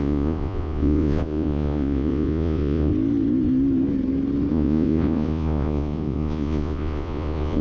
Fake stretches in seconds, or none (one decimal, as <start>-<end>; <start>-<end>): 0.0-2.9; 4.5-7.6